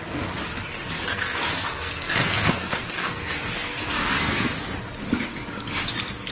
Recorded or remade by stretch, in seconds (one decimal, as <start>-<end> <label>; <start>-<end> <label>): 0.0-1.1 recorded; 1.1-4.5 remade; 4.5-6.3 recorded